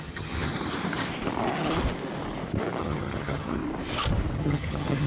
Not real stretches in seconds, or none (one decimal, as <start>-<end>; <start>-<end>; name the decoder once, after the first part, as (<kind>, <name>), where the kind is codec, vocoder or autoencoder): 0.0-0.5 (vocoder, HiFi-GAN); 2.8-3.6; 4.4-5.1